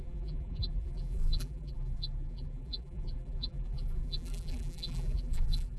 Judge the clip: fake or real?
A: fake